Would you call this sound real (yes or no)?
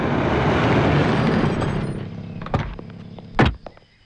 yes